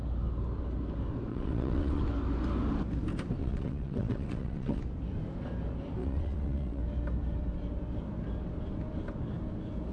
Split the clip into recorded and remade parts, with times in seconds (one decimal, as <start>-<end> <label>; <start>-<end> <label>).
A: 0.0-1.3 recorded; 1.3-2.0 remade; 2.0-3.4 recorded; 3.4-4.8 remade; 4.8-6.0 recorded; 6.0-6.8 remade; 6.8-9.9 recorded